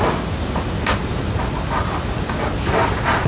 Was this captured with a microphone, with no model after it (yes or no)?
yes